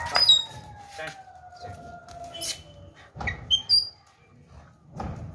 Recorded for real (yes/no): yes